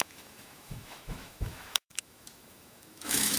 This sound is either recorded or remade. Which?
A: remade